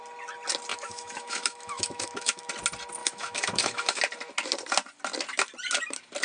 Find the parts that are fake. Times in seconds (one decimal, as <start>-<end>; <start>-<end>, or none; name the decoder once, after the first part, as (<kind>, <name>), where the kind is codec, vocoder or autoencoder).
0.7-2.5 (autoencoder, DAC-VAE); 3.0-4.0